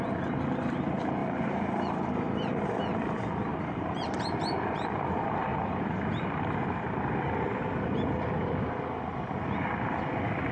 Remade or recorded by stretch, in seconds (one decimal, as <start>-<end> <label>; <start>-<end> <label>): 0.0-1.2 recorded; 1.2-2.7 remade; 2.7-3.5 recorded; 3.5-4.4 remade; 4.4-10.5 recorded